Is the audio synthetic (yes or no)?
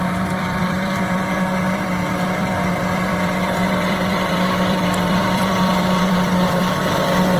yes